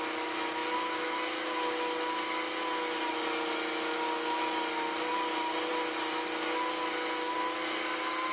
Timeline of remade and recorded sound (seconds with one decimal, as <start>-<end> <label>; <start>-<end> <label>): 0.0-8.3 recorded